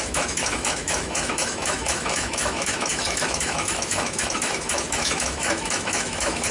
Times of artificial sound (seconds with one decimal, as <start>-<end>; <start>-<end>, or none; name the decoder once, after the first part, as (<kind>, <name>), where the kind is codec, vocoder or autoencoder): 0.0-6.5 (autoencoder, DAC-VAE)